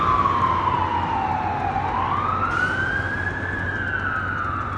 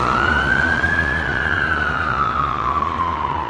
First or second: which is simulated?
second